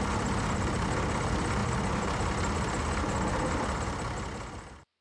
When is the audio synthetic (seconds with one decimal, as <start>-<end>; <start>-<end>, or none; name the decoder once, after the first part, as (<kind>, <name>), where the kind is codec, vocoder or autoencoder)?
none